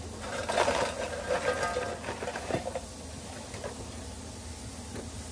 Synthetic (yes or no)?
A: no